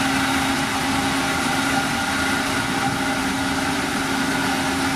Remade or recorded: recorded